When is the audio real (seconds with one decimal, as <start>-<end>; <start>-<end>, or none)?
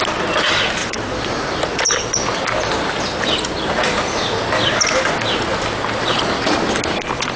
0.0-0.8; 2.3-7.4